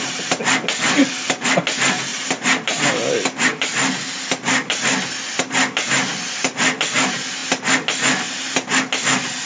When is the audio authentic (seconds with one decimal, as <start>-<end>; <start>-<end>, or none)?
0.0-6.1; 6.8-9.5